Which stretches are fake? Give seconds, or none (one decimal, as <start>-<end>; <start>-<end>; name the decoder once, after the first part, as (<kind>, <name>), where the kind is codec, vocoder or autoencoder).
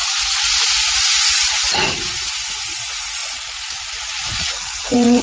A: 1.0-5.2 (vocoder, Vocos)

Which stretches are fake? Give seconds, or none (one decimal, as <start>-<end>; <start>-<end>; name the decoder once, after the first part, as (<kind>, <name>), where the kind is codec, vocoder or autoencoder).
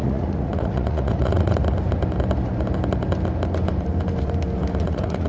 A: 0.0-1.6 (vocoder, Vocos); 4.8-5.3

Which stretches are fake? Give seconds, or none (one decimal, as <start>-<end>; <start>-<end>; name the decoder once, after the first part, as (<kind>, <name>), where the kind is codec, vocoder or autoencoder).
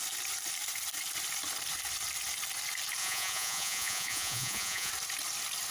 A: 3.0-4.9 (vocoder, Vocos)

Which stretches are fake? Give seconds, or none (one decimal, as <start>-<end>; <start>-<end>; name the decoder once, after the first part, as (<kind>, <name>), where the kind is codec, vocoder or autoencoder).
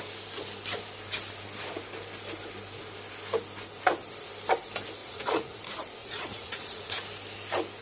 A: 5.0-5.6 (vocoder, Vocos); 6.0-6.9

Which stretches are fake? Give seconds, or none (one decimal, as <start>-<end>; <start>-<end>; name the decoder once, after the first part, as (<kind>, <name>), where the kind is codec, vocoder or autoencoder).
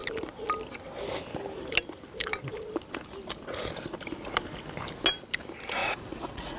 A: 5.8-6.6 (vocoder, Vocos)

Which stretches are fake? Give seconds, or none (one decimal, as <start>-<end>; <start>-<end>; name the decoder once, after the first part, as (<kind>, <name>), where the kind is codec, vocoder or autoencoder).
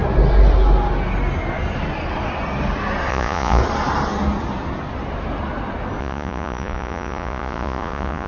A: 3.1-3.6 (vocoder, Vocos); 6.0-8.3